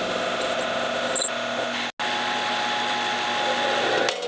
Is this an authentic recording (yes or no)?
yes